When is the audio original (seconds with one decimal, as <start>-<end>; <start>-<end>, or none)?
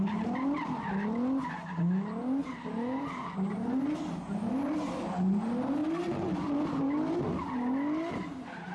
0.0-8.7